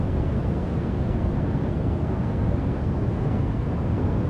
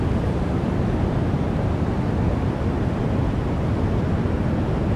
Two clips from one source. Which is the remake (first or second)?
first